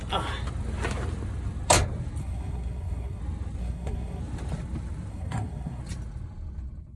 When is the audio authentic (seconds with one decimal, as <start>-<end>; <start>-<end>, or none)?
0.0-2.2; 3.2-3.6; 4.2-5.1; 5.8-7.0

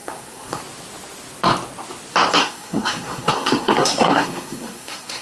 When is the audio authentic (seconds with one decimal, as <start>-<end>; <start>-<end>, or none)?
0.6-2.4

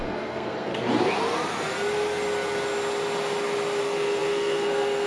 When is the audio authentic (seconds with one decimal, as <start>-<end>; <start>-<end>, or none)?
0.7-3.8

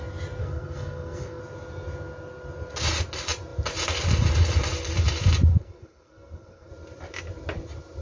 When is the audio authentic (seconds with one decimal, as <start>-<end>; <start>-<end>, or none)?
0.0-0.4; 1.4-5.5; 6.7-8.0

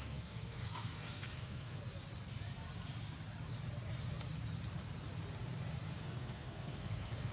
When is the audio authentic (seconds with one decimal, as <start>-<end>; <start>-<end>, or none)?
1.8-6.0

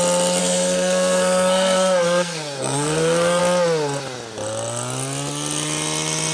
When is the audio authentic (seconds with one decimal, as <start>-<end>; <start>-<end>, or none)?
0.0-0.4; 3.4-6.3

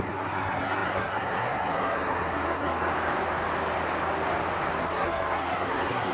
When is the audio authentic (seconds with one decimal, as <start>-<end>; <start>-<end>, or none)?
2.9-4.8